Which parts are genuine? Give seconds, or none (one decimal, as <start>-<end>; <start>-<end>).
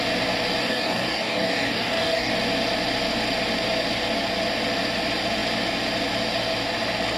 0.0-0.6; 2.3-7.2